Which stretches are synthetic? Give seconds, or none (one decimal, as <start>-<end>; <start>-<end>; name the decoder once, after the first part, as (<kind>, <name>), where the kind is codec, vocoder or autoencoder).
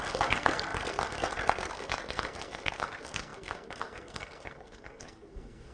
0.0-5.7 (codec, SNAC)